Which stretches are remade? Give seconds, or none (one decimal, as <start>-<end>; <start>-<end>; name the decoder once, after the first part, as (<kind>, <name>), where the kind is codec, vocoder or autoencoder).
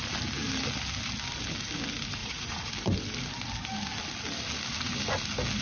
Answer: 2.2-2.7 (vocoder, Vocos)